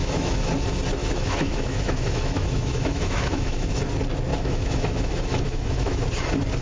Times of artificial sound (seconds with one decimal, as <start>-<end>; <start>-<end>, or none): 0.0-0.5; 1.0-3.8; 4.3-6.0